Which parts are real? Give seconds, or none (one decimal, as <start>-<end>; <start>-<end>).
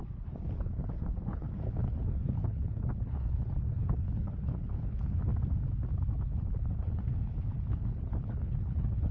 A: 5.3-6.2